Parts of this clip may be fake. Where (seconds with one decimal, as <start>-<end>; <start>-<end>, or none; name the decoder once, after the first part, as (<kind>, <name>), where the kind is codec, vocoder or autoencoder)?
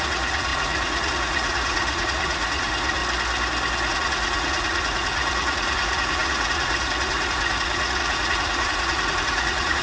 0.0-3.0 (vocoder, Vocos); 3.9-9.8